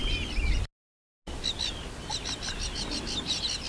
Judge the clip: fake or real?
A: real